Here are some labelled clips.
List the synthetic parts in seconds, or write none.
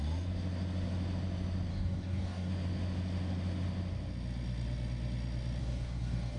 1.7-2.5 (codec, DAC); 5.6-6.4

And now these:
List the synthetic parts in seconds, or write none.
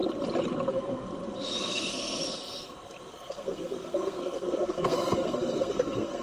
0.7-1.1 (codec, SNAC); 1.7-2.2; 3.1-6.2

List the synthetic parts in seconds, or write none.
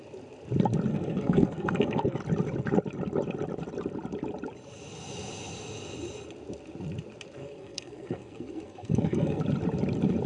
0.9-2.2 (codec, SNAC); 7.4-9.4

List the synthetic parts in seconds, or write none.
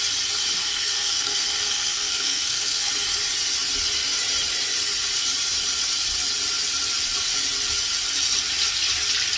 0.6-2.9 (codec, SNAC)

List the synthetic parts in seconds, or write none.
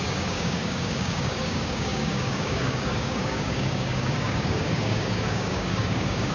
0.0-6.3 (codec, DAC)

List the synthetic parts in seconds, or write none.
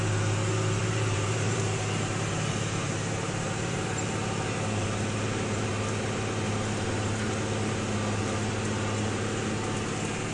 0.8-5.7 (vocoder, BigVGAN v2)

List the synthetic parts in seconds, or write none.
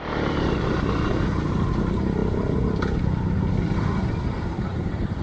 0.0-2.2 (vocoder, BigVGAN v2); 4.1-5.2